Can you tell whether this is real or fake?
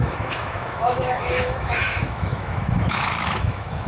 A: fake